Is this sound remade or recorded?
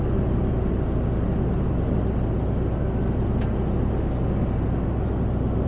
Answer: recorded